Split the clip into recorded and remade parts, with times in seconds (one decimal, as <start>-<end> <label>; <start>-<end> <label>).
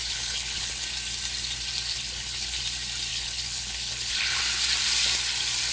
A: 0.0-0.7 remade; 0.7-1.9 recorded; 1.9-2.6 remade; 2.6-3.1 recorded; 3.1-4.4 remade; 4.4-5.7 recorded